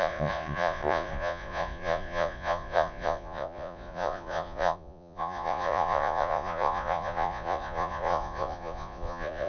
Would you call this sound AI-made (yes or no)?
yes